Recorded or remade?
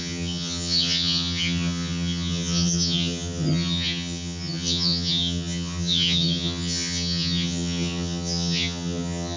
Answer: remade